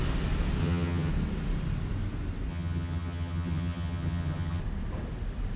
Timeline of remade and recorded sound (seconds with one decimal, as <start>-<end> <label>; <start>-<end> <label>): 0.0-0.6 recorded; 0.6-1.1 remade; 1.1-2.5 recorded; 2.5-4.6 remade; 4.6-5.6 recorded